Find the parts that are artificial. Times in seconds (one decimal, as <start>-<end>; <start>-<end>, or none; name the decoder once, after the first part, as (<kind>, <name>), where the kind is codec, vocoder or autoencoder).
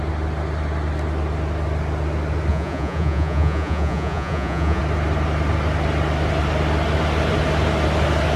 2.5-4.8 (vocoder, Vocos)